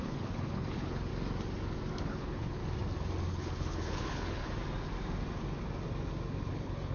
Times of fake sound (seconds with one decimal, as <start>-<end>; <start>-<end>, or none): 0.0-1.1; 2.0-2.6; 3.3-4.4; 6.5-6.9